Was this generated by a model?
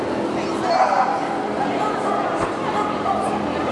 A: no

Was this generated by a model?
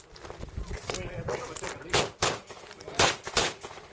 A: no